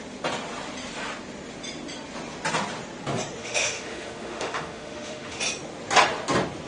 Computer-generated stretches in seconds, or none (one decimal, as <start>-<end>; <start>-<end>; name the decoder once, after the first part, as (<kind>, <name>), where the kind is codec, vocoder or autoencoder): 3.4-5.4 (autoencoder, DAC-VAE)